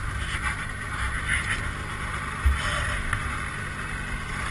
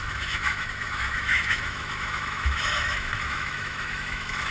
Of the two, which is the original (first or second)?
first